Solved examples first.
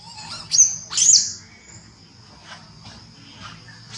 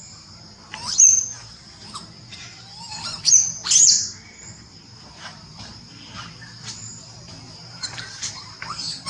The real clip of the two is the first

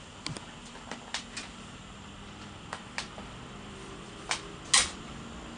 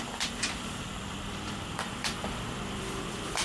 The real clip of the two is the first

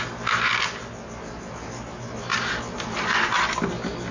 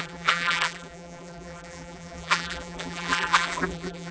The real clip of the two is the first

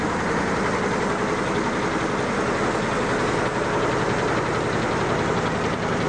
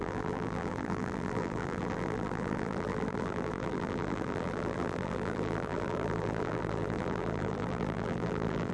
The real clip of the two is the first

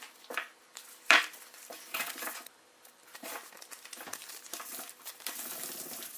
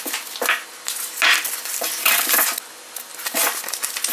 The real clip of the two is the second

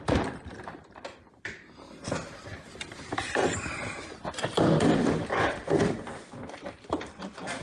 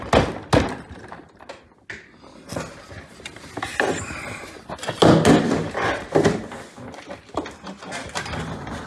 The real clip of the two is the second